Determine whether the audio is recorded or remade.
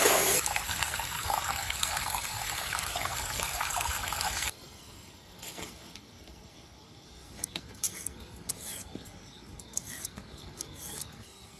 remade